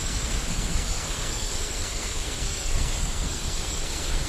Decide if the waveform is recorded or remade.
remade